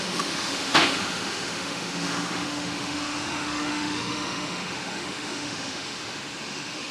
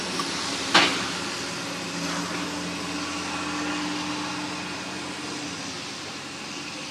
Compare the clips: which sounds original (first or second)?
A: second